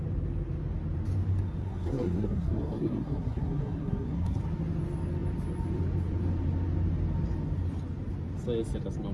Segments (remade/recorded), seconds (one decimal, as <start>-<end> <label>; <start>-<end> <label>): 0.0-1.6 recorded; 1.6-4.4 remade; 4.4-9.1 recorded